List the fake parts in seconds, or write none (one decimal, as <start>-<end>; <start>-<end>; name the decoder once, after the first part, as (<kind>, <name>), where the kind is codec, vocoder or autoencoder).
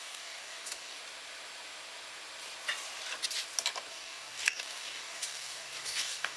0.0-1.0 (codec, DAC); 3.9-6.4